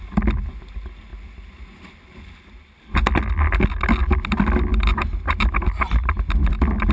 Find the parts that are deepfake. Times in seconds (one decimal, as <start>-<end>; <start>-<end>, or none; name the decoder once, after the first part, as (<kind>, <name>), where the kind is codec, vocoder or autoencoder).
none